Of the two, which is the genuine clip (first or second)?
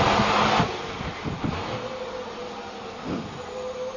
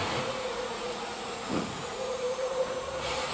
first